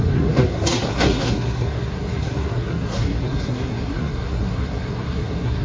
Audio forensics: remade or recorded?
remade